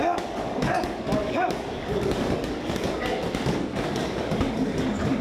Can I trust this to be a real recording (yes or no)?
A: no